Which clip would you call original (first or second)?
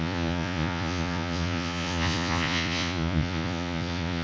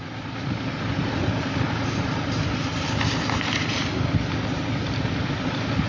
second